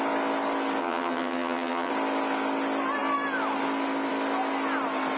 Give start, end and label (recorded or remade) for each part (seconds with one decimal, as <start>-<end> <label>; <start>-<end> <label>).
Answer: 0.0-0.8 recorded; 0.8-1.9 remade; 1.9-5.2 recorded